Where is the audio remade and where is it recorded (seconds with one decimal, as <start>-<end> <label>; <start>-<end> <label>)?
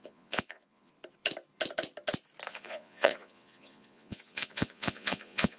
0.0-0.9 remade; 0.9-2.5 recorded; 2.5-5.6 remade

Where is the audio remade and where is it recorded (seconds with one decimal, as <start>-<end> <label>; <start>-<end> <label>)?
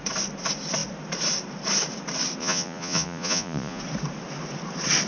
0.0-2.4 recorded; 2.4-3.8 remade; 3.8-5.1 recorded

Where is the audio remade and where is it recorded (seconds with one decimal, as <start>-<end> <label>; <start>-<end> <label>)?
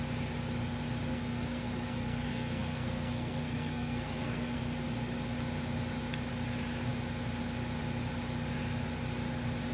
0.0-1.1 recorded; 1.1-4.6 remade; 4.6-9.7 recorded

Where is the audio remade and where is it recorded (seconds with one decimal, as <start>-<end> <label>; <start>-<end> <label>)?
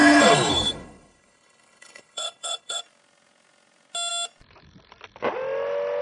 0.0-2.8 remade; 2.8-6.0 recorded